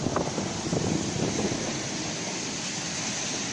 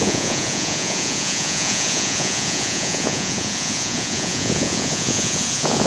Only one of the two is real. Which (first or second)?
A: first